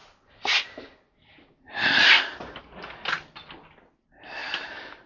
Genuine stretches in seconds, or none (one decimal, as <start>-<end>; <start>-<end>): 0.0-4.4